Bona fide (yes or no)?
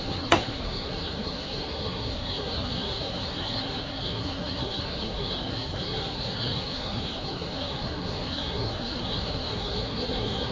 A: no